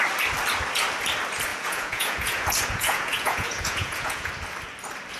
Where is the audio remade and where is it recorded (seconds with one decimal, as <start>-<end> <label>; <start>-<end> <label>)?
0.0-1.5 recorded; 1.5-4.3 remade; 4.3-5.2 recorded